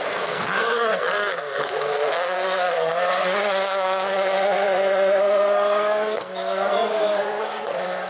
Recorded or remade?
remade